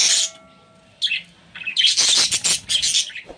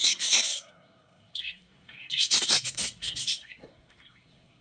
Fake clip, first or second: second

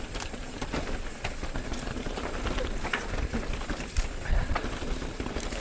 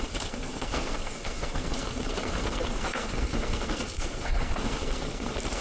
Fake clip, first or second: second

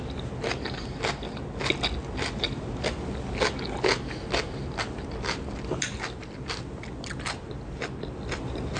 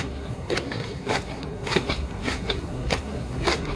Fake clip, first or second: second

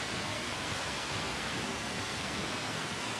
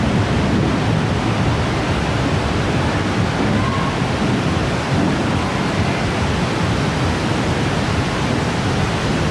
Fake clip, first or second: first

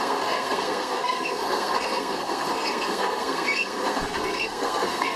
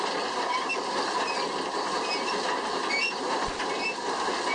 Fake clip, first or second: first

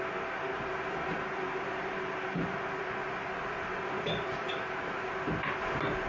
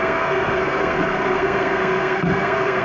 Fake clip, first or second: second